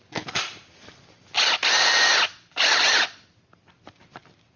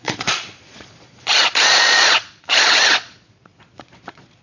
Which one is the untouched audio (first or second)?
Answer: first